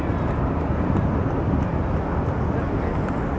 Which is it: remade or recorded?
recorded